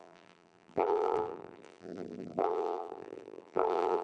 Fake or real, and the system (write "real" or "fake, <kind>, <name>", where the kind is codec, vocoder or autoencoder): fake, vocoder, BigVGAN v2